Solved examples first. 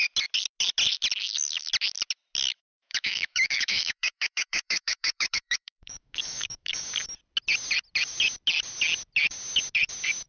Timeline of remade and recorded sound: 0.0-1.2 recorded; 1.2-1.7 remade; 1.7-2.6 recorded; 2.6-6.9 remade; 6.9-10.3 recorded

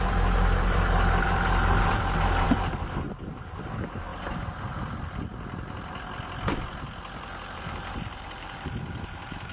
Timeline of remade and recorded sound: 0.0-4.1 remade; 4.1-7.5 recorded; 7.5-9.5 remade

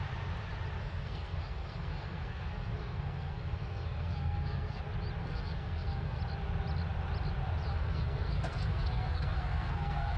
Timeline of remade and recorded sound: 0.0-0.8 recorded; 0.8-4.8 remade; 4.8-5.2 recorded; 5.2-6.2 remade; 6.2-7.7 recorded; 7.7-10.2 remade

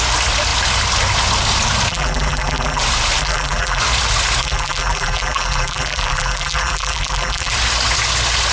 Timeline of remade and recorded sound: 0.0-1.9 recorded; 1.9-2.8 remade; 2.8-3.2 recorded; 3.2-3.8 remade; 3.8-4.4 recorded; 4.4-7.5 remade; 7.5-8.5 recorded